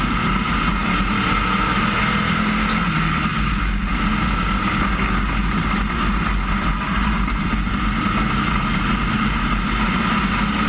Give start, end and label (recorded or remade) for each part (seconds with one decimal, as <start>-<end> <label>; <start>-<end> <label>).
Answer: 0.0-10.7 recorded